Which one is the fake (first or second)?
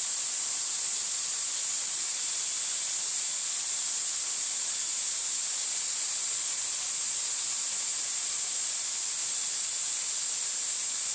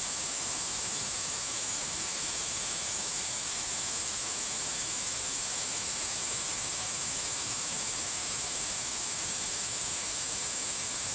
second